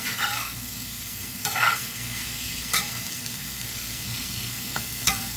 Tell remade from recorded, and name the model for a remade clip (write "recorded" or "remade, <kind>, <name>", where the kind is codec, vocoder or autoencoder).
remade, codec, SNAC